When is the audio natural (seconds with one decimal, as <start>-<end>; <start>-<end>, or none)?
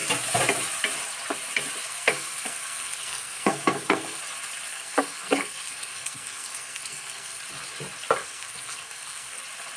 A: 0.0-1.8; 4.2-4.7; 7.4-8.2; 9.4-9.8